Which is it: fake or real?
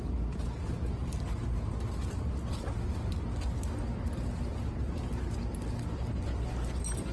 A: real